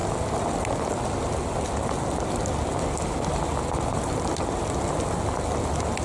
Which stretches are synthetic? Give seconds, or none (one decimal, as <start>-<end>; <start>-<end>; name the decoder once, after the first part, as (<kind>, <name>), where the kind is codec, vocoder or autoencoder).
none